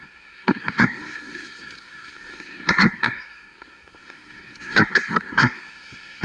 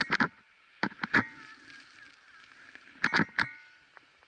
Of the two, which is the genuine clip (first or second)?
second